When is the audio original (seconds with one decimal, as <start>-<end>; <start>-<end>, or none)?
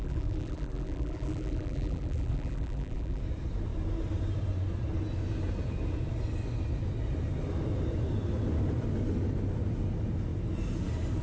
3.2-11.2